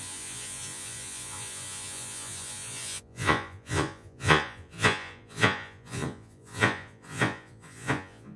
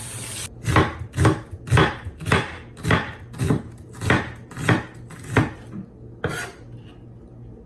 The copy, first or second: first